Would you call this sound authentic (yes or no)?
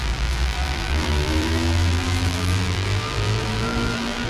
no